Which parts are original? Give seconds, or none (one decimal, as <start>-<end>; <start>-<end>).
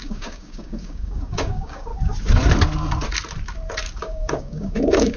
1.9-4.0